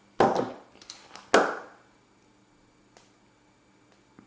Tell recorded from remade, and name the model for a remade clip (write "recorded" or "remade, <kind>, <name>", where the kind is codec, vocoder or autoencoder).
recorded